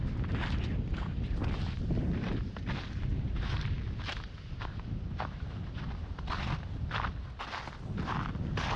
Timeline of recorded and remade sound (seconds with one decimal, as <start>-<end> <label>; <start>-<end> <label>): 0.0-0.9 recorded; 0.9-1.4 remade; 1.4-3.1 recorded; 3.1-6.3 remade; 6.3-8.8 recorded